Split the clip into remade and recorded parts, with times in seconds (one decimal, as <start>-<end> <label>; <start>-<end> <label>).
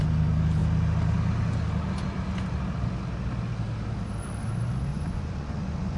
0.0-4.9 recorded; 4.9-6.0 remade